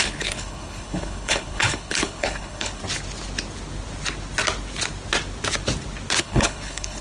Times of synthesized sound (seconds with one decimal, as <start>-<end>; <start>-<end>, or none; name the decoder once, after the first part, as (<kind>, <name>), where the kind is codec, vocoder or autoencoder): 0.0-2.8 (codec, HILCodec); 6.2-7.0